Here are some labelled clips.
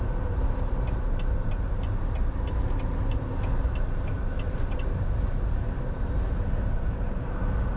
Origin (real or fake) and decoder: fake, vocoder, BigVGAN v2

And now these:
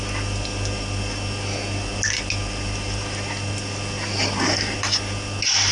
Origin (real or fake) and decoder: real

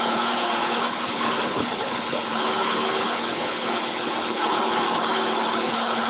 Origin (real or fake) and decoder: fake, codec, HILCodec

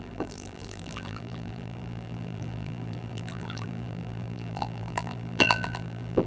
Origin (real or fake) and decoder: fake, vocoder, BigVGAN v2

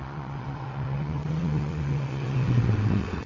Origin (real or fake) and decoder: fake, vocoder, WaveNeXt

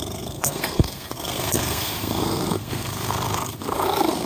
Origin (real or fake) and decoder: fake, codec, SNAC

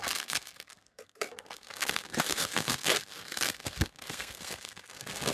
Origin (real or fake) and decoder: fake, codec, SNAC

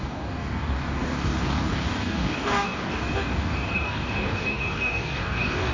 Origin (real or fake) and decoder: fake, codec, DAC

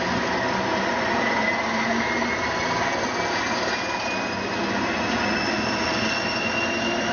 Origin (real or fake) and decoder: real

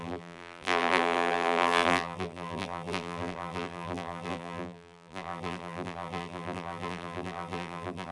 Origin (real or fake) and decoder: fake, vocoder, BigVGAN v2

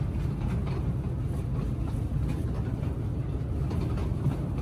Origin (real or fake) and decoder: real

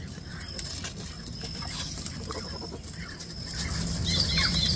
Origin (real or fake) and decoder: real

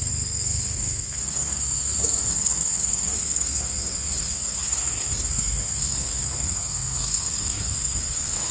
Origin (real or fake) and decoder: fake, codec, SNAC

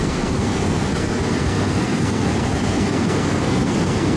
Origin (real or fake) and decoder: fake, codec, SNAC